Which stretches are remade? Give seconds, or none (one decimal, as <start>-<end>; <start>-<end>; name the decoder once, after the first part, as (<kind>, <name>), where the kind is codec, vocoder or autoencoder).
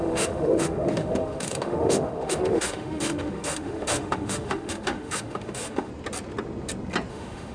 0.0-5.9 (autoencoder, DAC-VAE); 7.1-7.5